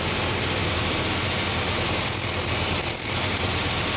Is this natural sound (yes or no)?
yes